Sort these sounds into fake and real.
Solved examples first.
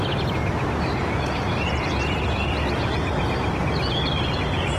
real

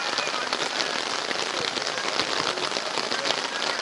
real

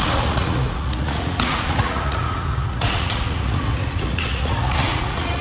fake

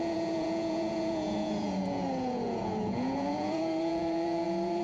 fake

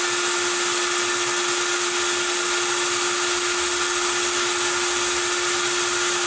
real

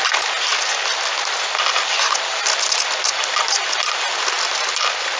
real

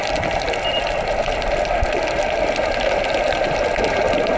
real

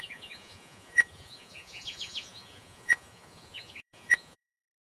fake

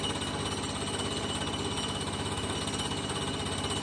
real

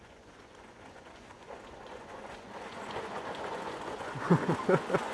fake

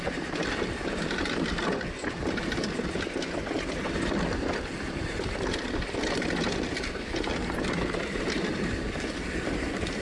real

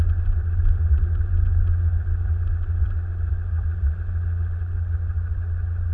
fake